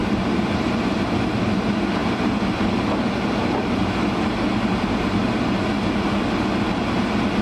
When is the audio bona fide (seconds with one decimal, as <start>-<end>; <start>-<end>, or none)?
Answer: 0.7-7.4